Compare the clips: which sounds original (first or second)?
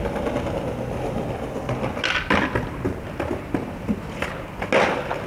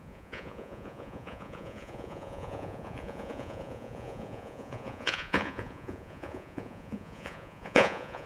first